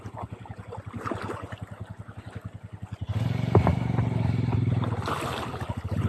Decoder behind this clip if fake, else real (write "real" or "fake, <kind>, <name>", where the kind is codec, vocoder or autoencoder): real